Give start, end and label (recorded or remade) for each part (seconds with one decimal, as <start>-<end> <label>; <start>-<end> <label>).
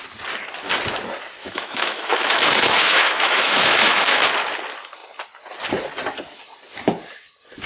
0.0-1.4 recorded; 1.4-4.2 remade; 4.2-7.7 recorded